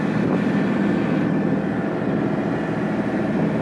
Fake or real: real